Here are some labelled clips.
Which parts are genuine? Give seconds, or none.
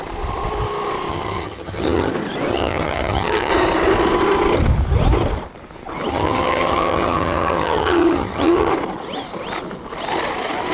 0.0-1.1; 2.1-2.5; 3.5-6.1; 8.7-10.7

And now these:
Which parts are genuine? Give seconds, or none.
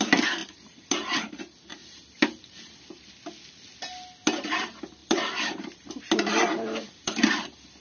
0.0-0.4; 1.4-1.8; 3.1-5.0; 7.2-7.8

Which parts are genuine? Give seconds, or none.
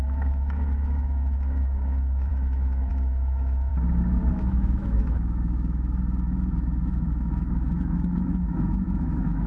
3.7-4.3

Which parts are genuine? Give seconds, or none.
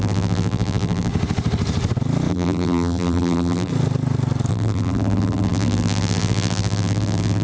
1.1-2.3; 3.7-4.5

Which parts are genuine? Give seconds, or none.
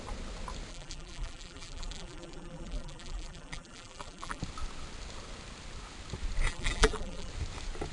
0.0-0.7; 4.4-6.5; 7.3-7.9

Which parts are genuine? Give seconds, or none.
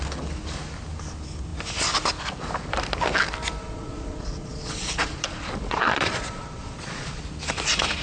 0.0-3.6; 7.2-8.0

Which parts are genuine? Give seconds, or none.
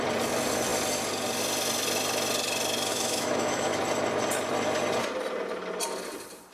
0.0-2.9; 3.8-6.5